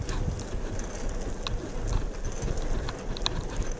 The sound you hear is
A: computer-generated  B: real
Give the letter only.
B